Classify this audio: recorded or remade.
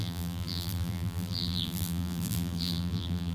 remade